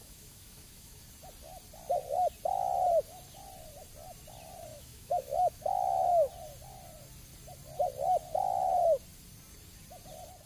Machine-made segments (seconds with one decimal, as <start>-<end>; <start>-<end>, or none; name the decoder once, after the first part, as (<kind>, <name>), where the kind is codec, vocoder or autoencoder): 0.0-1.0 (autoencoder, DAC-VAE); 4.7-6.3